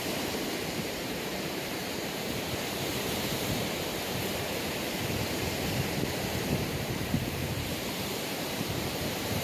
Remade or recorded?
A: remade